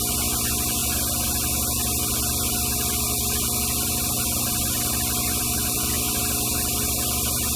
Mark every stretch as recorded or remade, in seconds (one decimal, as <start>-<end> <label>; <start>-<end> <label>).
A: 0.0-7.6 recorded